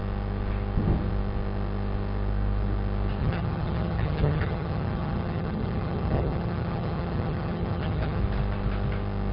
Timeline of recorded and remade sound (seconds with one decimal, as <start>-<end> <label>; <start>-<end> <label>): 0.0-3.2 recorded; 3.2-8.2 remade; 8.2-9.3 recorded